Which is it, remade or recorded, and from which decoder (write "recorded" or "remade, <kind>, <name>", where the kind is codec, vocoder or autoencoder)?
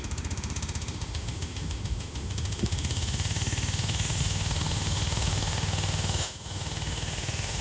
remade, autoencoder, DAC-VAE